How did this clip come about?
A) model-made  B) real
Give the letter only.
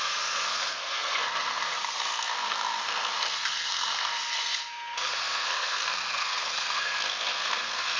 A